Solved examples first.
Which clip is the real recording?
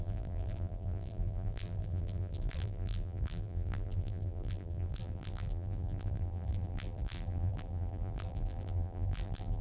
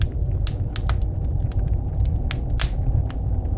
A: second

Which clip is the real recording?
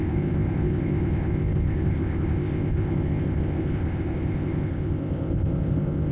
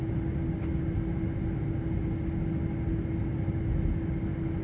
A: second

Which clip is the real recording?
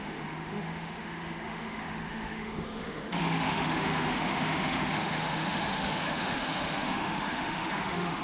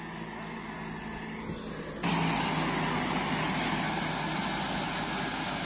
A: second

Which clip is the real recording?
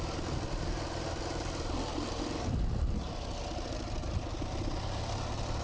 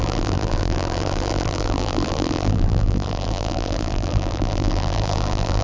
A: first